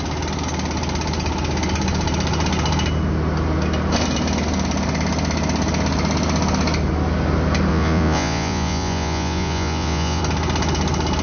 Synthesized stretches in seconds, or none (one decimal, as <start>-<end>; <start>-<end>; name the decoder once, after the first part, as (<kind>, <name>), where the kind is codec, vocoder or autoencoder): 7.7-10.2 (vocoder, Vocos)